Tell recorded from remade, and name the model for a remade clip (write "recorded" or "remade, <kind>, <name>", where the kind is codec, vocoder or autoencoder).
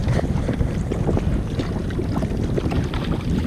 recorded